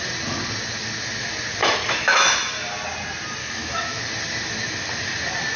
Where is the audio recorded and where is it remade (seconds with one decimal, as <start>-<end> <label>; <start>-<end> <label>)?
0.0-1.6 recorded; 1.6-2.5 remade; 2.5-3.4 recorded; 3.4-4.0 remade; 4.0-5.6 recorded

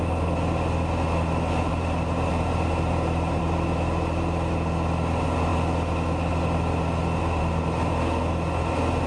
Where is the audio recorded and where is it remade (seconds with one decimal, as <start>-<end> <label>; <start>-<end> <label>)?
0.0-1.7 recorded; 1.7-3.4 remade; 3.4-9.1 recorded

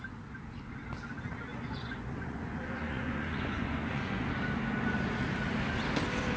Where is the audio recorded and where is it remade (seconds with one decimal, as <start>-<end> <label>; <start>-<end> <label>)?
0.0-1.5 recorded; 1.5-4.3 remade; 4.3-6.4 recorded

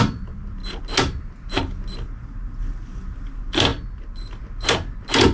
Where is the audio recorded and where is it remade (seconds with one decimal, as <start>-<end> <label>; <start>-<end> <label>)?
0.0-5.3 recorded

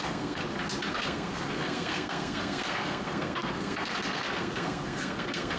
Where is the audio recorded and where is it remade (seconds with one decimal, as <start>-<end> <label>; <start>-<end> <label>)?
0.0-0.4 remade; 0.4-0.9 recorded; 0.9-5.6 remade